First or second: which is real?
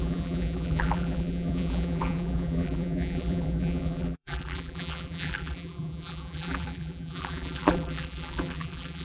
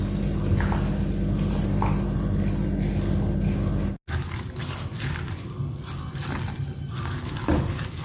second